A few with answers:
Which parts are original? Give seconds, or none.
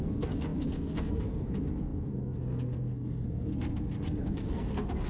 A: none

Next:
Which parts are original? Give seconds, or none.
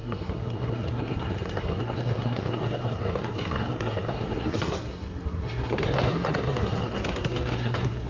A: none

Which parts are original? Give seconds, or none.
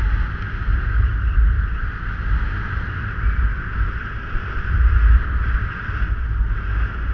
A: 0.0-7.1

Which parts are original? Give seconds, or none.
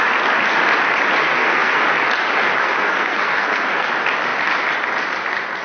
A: 0.0-1.2; 1.8-2.6; 3.9-5.6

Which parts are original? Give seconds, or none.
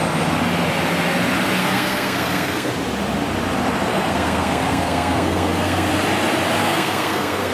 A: 0.0-1.6; 2.7-3.9; 5.9-6.6